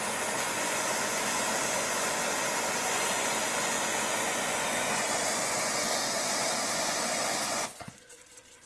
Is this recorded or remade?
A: remade